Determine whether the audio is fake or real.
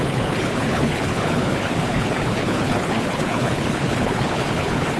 fake